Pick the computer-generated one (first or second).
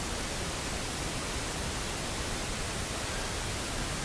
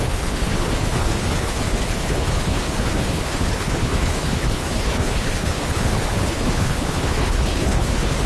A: second